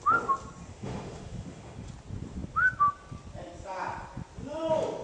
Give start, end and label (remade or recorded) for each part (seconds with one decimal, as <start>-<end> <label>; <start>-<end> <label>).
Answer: 0.0-0.7 recorded; 0.7-1.9 remade; 1.9-5.0 recorded